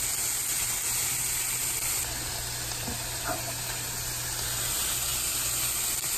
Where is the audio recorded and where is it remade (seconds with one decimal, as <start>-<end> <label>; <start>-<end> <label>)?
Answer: 0.0-6.2 recorded